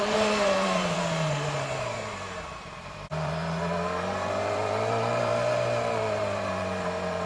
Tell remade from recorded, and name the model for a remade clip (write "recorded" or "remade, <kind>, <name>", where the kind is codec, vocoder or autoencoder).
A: remade, vocoder, BigVGAN v2